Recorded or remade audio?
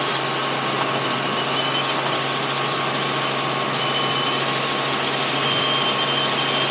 recorded